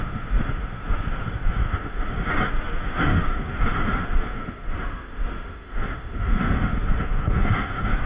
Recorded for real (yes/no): no